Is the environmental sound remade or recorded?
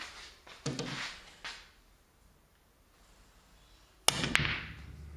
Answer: recorded